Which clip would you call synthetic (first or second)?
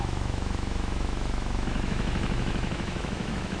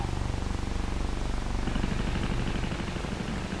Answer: first